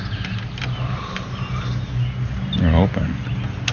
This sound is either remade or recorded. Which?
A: recorded